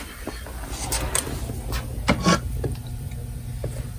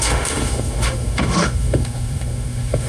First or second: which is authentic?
first